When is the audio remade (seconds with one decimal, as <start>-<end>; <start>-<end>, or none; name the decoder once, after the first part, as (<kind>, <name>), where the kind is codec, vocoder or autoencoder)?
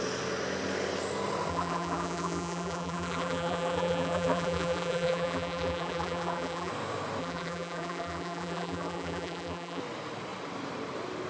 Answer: 1.5-6.7 (vocoder, BigVGAN v2); 7.2-9.8